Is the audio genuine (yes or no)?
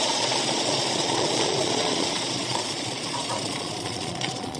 no